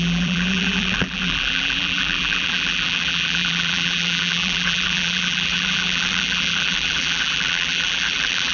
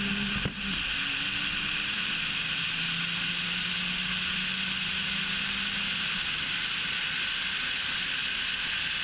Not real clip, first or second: first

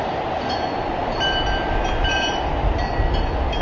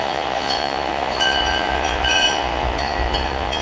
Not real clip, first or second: second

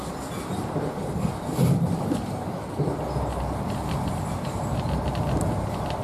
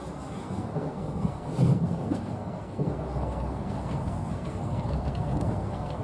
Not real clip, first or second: second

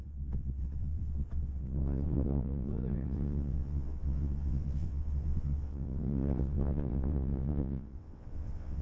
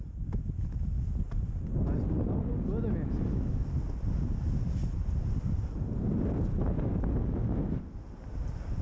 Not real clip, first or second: first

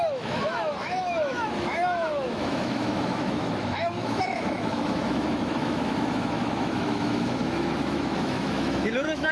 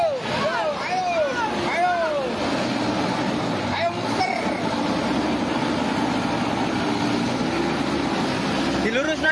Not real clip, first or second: first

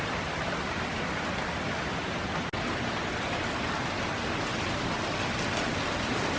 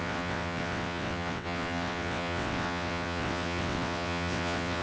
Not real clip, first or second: second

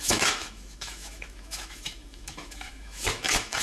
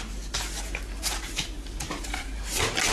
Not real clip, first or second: first